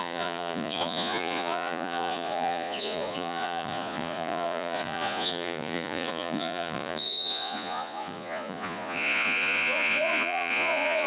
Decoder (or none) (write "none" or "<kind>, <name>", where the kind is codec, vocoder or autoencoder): vocoder, Vocos